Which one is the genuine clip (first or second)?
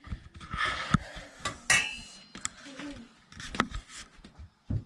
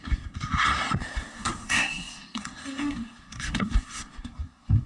first